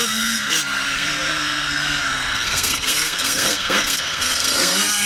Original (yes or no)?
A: no